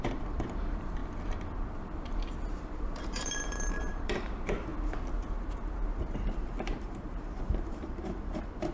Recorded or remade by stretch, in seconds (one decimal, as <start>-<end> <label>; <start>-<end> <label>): 0.0-1.0 remade; 1.0-2.6 recorded; 2.6-4.7 remade; 4.7-6.0 recorded; 6.0-8.7 remade